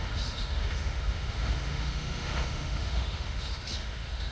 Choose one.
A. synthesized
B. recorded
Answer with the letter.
A